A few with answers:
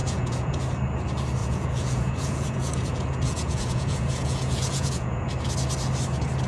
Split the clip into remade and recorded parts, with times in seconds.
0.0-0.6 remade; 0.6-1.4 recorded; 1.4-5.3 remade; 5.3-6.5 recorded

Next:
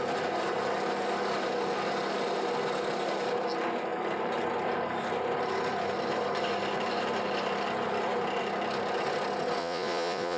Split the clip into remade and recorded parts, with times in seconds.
0.0-9.6 recorded; 9.6-10.4 remade

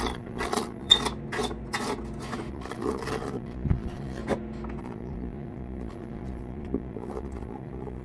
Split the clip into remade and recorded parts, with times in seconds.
0.0-0.9 remade; 0.9-2.5 recorded; 2.5-4.2 remade; 4.2-4.8 recorded; 4.8-8.0 remade

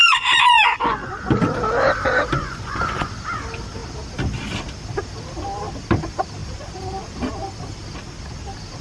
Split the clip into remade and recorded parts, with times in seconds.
0.0-1.1 remade; 1.1-2.4 recorded; 2.4-3.1 remade; 3.1-8.8 recorded